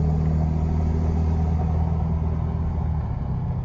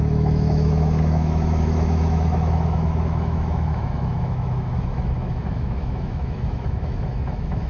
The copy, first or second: second